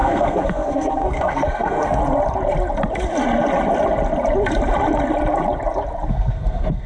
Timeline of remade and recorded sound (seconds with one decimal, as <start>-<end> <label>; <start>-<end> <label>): 0.0-2.0 remade; 2.0-6.1 recorded; 6.1-6.9 remade